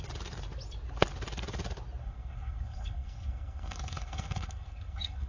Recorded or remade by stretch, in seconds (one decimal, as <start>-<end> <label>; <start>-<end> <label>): 0.0-2.0 recorded; 2.0-5.3 remade